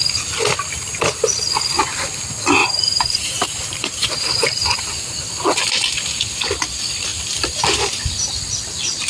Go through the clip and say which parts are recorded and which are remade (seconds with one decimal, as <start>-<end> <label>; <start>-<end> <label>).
0.0-2.6 recorded; 2.6-4.8 remade; 4.8-7.1 recorded; 7.1-7.7 remade; 7.7-9.1 recorded